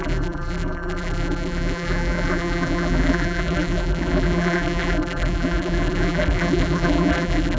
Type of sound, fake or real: fake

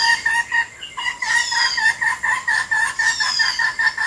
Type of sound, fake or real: real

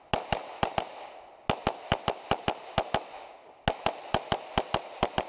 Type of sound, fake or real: real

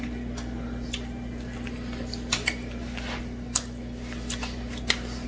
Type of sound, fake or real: real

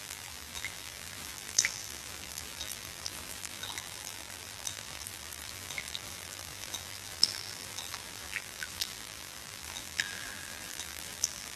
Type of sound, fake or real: fake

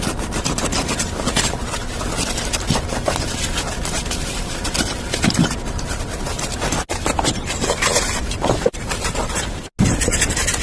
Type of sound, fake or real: real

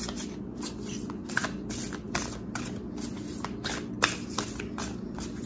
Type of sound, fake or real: real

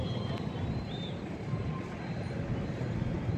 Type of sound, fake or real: fake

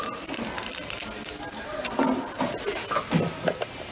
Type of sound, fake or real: real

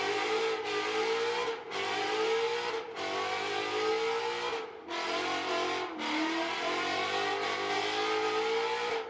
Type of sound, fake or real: real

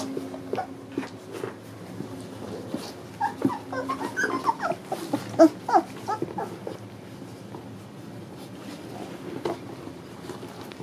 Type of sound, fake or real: real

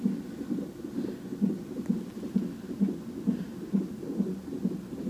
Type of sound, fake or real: real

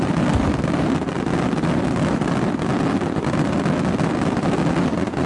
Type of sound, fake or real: real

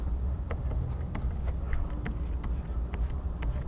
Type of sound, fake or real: real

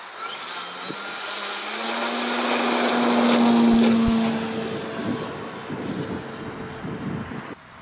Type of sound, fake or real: real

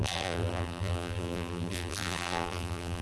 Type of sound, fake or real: fake